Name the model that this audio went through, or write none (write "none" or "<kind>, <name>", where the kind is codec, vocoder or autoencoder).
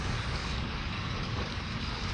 codec, DAC